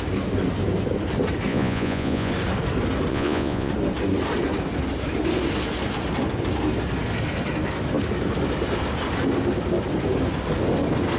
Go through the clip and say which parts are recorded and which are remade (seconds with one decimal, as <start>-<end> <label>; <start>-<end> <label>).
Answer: 0.0-1.5 recorded; 1.5-2.3 remade; 2.3-3.1 recorded; 3.1-3.7 remade; 3.7-11.2 recorded